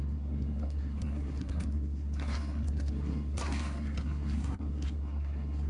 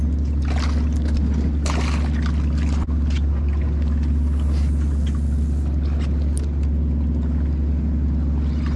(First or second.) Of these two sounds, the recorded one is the second